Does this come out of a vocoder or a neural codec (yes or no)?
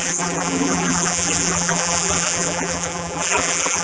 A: yes